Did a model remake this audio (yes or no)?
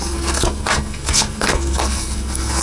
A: yes